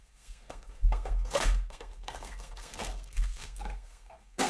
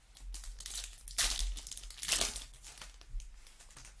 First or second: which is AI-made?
first